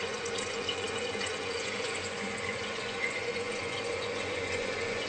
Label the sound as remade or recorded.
remade